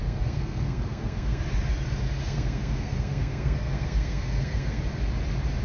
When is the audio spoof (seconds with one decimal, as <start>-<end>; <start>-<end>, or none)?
0.0-1.4; 2.2-4.8